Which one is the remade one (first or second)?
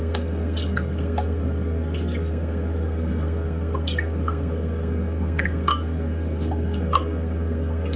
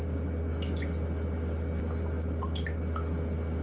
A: first